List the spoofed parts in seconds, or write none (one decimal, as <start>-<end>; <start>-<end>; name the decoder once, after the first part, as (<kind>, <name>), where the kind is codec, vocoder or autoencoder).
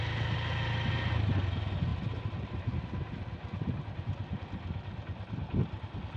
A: none